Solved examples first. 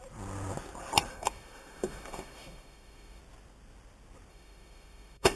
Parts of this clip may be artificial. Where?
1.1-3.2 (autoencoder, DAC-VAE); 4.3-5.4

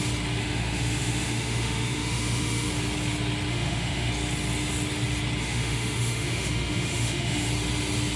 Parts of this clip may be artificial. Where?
0.4-2.7 (autoencoder, DAC-VAE); 3.5-4.1; 5.4-7.5

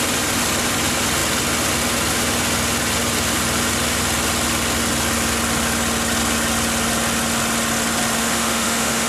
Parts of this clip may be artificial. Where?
8.2-9.1 (autoencoder, DAC-VAE)

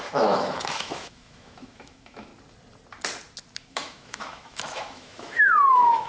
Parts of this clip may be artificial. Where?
0.0-2.3 (autoencoder, DAC-VAE); 3.7-6.1

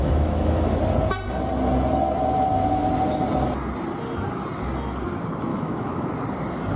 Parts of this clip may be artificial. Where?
0.0-0.8 (autoencoder, DAC-VAE); 5.5-6.1

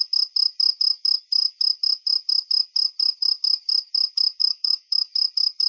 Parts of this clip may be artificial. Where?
4.4-5.1 (autoencoder, DAC-VAE)